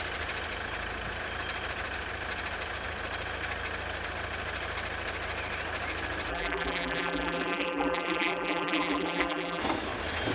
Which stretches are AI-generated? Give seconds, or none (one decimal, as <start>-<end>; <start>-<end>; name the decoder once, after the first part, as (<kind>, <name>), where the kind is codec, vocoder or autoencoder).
6.3-9.6 (vocoder, BigVGAN v2)